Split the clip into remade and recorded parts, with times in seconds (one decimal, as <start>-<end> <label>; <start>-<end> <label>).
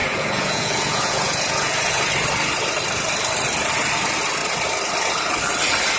0.0-2.1 remade; 2.1-6.0 recorded